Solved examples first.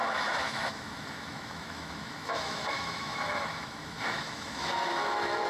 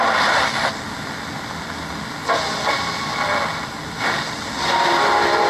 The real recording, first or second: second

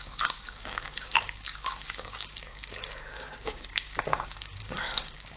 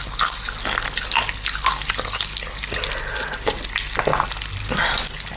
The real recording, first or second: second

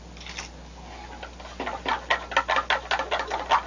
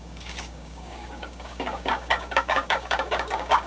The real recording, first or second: first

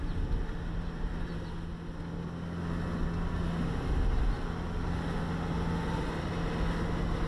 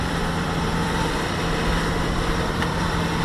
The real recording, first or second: first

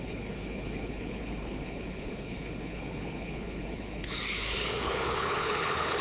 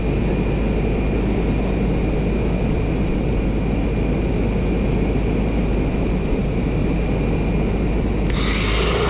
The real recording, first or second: second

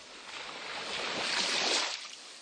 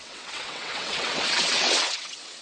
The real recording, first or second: first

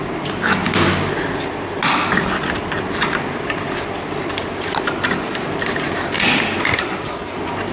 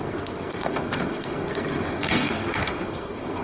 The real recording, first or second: first